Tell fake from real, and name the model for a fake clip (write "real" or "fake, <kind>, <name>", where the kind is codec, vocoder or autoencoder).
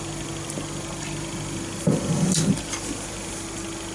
real